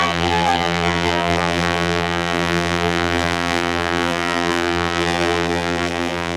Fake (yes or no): yes